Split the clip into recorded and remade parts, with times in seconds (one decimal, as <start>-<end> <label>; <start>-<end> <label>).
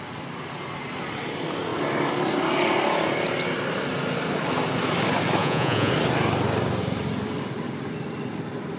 0.0-5.4 recorded; 5.4-5.9 remade; 5.9-8.8 recorded